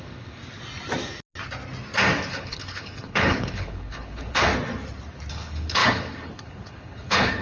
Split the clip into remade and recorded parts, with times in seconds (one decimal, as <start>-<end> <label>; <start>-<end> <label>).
0.0-0.4 remade; 0.4-2.3 recorded; 2.3-4.5 remade; 4.5-5.3 recorded; 5.3-7.4 remade